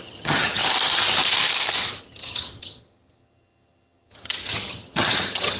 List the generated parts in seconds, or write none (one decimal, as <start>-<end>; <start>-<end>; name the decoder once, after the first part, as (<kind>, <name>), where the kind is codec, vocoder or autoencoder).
0.0-0.6 (vocoder, HiFi-GAN); 2.0-5.6